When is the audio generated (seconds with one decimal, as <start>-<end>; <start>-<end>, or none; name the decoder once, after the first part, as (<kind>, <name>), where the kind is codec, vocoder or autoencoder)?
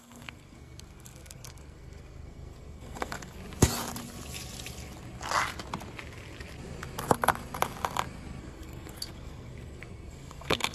0.0-3.4 (codec, SNAC); 8.4-10.7